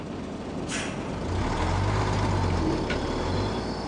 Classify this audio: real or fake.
real